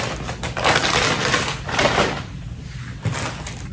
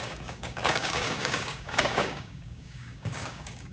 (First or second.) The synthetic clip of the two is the second